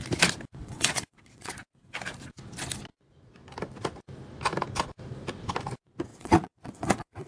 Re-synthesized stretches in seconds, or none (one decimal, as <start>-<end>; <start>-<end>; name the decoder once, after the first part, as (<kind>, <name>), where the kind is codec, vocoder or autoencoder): 0.6-1.5 (vocoder, WaveNeXt); 6.1-7.3